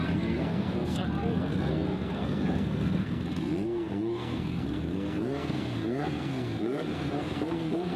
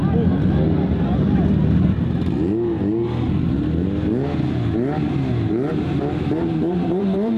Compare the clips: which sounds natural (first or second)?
second